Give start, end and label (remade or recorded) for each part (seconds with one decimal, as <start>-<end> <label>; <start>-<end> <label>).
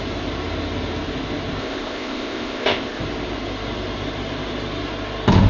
0.0-1.6 recorded; 1.6-3.0 remade; 3.0-5.5 recorded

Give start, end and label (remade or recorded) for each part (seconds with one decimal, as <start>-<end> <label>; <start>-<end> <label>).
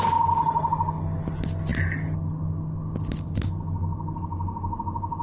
0.0-5.2 recorded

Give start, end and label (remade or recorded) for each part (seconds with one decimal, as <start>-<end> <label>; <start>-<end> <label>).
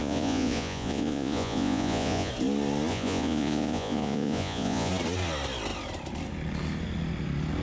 0.0-2.3 remade; 2.3-2.9 recorded; 2.9-4.9 remade; 4.9-7.6 recorded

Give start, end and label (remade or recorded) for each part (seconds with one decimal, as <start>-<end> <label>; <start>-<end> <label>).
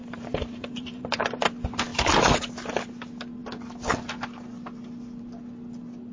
0.0-1.5 remade; 1.5-6.1 recorded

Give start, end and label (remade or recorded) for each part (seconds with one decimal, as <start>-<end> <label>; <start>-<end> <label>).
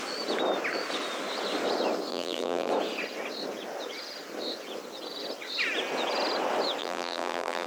0.0-2.1 recorded; 2.1-2.7 remade; 2.7-6.8 recorded; 6.8-7.7 remade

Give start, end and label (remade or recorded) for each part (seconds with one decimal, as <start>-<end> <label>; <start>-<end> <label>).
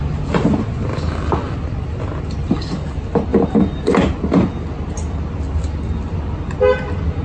0.0-7.2 recorded